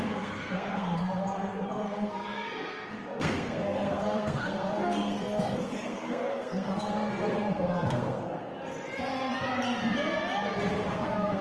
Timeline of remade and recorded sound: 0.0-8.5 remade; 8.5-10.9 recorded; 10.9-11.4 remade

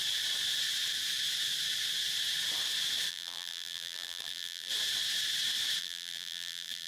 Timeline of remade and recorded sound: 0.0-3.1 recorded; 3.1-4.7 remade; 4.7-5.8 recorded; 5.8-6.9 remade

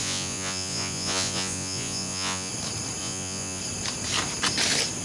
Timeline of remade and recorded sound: 0.0-2.5 remade; 2.5-3.0 recorded; 3.0-3.6 remade; 3.6-5.0 recorded

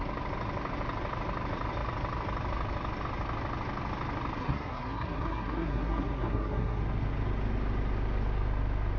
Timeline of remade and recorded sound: 0.0-4.4 recorded; 4.4-6.8 remade; 6.8-9.0 recorded

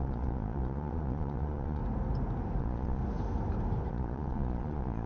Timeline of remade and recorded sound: 0.0-1.8 remade; 1.8-2.6 recorded; 2.6-3.0 remade; 3.0-3.9 recorded; 3.9-5.1 remade